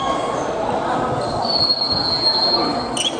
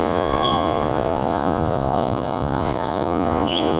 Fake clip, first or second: second